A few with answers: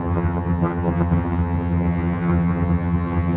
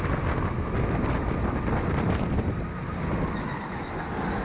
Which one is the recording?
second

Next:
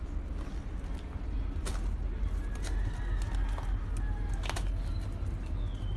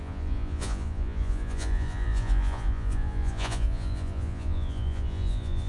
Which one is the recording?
first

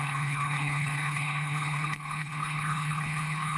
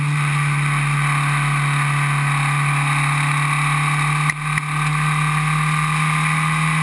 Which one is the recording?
second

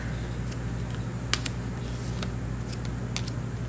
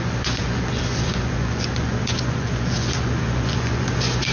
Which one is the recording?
first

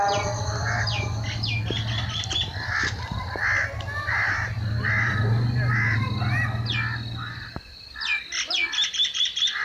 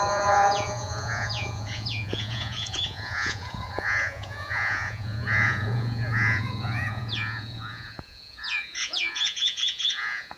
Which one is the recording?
first